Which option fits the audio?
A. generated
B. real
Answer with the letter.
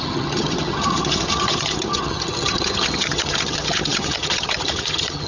A